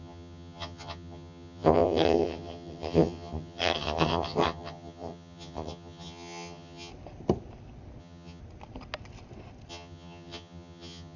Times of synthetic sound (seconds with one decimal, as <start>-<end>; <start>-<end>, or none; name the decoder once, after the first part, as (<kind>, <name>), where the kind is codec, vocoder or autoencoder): 0.0-6.9 (vocoder, HiFi-GAN); 8.0-8.4; 9.7-11.2